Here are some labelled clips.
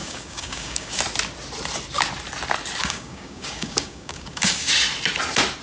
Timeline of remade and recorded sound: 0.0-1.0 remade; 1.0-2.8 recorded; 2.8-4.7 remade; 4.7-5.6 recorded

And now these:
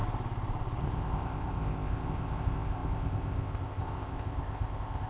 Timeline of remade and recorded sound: 0.0-0.8 recorded; 0.8-5.1 remade

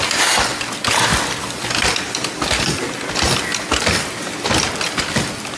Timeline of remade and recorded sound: 0.0-5.6 recorded

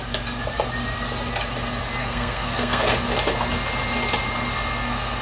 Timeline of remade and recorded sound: 0.0-2.0 recorded; 2.0-2.8 remade; 2.8-5.2 recorded

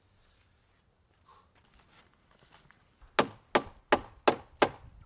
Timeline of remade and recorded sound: 0.0-5.1 recorded